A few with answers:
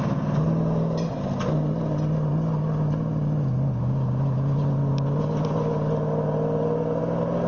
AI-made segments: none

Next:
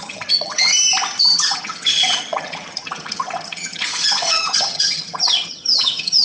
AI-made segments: 0.0-0.7 (vocoder, HiFi-GAN); 1.2-6.2